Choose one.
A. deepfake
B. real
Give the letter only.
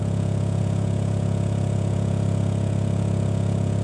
A